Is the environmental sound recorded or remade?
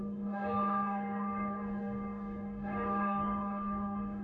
remade